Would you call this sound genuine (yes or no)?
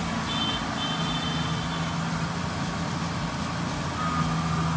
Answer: yes